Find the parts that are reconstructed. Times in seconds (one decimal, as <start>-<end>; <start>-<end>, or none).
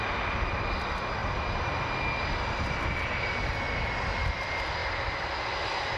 none